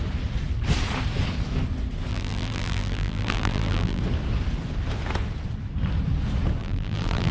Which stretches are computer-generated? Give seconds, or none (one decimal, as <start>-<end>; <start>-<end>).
2.1-4.0; 6.6-7.3